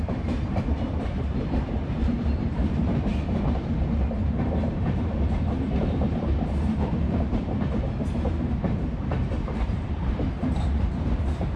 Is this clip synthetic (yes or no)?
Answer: yes